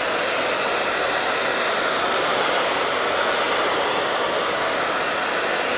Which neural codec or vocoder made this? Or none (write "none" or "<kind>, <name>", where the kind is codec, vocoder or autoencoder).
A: none